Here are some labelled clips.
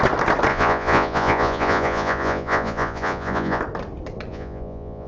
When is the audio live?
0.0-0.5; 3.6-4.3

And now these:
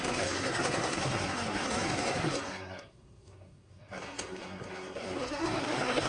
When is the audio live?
none

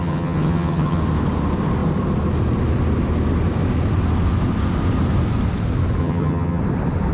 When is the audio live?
1.0-6.0; 6.6-7.1

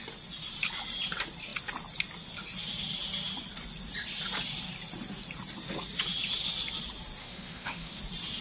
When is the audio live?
0.0-7.2; 8.0-8.4

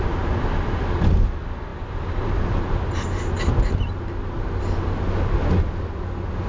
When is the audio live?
0.0-6.5

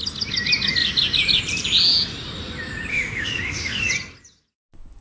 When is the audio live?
0.0-2.9; 3.9-5.0

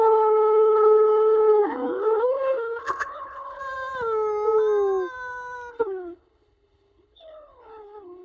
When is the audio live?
3.6-5.7